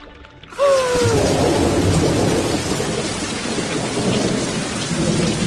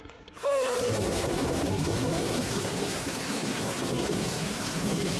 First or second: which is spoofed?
second